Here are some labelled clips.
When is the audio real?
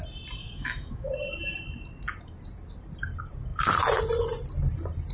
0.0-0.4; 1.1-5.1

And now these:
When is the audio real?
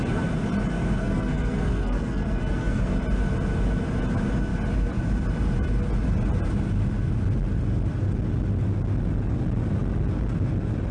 0.0-1.0; 3.0-10.9